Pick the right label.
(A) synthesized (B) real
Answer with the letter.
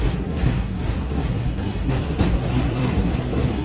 A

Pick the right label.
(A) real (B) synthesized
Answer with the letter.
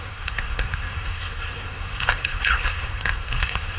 B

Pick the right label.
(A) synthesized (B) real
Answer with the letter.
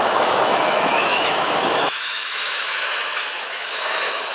A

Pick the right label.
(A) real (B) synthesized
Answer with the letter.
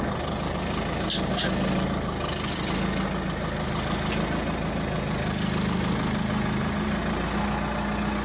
A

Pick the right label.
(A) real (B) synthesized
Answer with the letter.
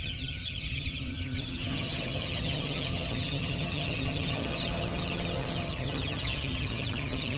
B